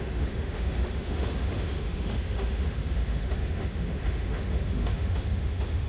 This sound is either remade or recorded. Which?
remade